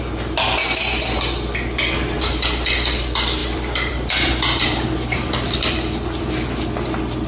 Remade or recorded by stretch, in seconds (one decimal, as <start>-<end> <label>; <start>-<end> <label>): 0.0-3.4 recorded; 3.4-6.3 remade; 6.3-7.3 recorded